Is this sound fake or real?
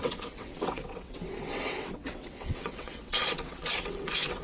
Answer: fake